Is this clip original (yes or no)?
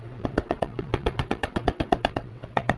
no